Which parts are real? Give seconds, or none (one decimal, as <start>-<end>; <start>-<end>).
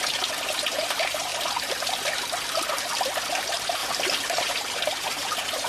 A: 1.3-3.4; 3.8-4.3